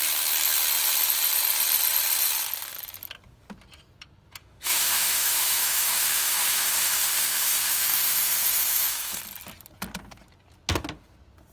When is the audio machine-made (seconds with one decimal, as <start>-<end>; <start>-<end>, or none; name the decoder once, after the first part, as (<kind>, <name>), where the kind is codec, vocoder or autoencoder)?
4.4-9.2 (autoencoder, DAC-VAE)